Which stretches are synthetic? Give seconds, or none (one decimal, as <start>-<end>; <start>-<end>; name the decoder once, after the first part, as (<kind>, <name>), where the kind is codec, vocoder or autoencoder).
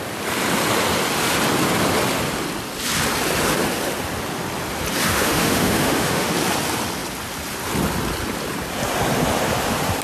5.1-6.3 (autoencoder, DAC-VAE)